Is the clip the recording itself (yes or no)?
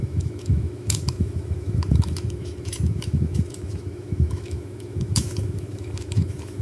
no